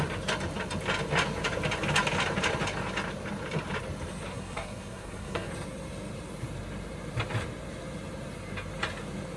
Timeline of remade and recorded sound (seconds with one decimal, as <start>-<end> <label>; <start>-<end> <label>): 0.0-4.3 recorded; 4.3-5.5 remade; 5.5-9.4 recorded